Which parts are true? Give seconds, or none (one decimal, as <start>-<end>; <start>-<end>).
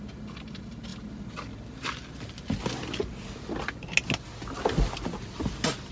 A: 0.0-5.9